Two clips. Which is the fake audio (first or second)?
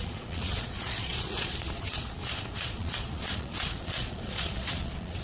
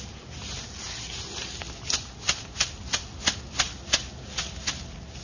first